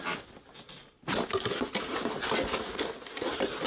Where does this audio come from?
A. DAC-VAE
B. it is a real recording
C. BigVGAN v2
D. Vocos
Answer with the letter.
B